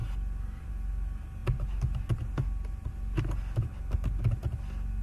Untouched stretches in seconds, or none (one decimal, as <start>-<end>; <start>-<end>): 0.0-5.0